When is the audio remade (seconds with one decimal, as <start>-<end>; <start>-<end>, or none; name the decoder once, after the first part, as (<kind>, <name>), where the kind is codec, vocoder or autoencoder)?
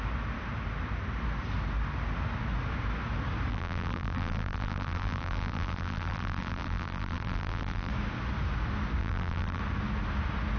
3.5-7.9 (vocoder, BigVGAN v2); 9.0-9.6